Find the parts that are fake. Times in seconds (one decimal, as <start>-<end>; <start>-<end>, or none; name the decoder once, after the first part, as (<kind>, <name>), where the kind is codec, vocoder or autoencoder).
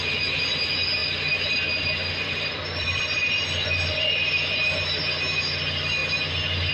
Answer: 1.0-5.0 (vocoder, BigVGAN v2)